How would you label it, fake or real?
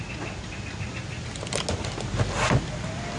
real